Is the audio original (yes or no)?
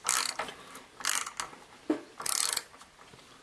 yes